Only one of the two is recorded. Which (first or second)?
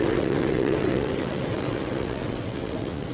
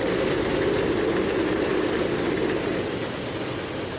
second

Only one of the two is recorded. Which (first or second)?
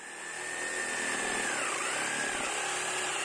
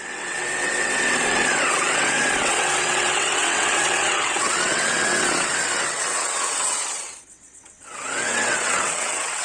first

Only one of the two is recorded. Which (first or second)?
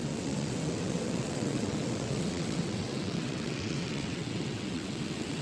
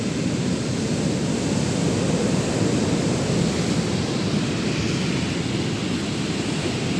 second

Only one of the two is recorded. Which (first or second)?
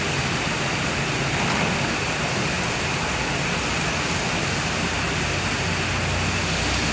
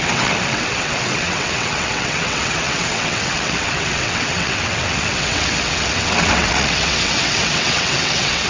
first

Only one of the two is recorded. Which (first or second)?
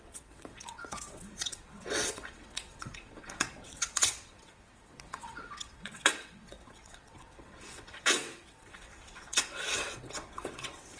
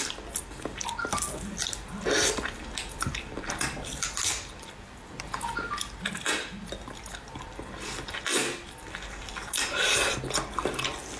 second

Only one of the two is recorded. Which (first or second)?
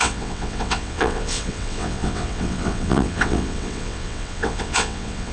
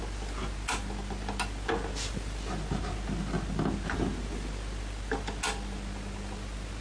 second